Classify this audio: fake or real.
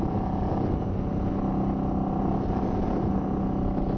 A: real